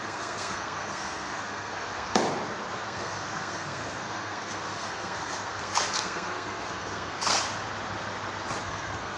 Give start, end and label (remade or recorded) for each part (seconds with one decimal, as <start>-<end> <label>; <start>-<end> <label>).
0.0-2.2 remade; 2.2-2.7 recorded; 2.7-7.4 remade; 7.4-8.6 recorded; 8.6-9.2 remade